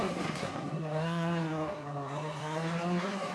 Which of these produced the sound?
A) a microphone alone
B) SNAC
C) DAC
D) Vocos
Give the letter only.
B